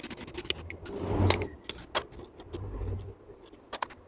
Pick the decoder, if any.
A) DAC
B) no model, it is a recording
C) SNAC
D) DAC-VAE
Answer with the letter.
B